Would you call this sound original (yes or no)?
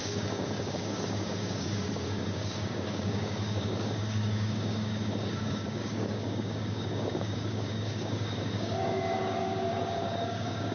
no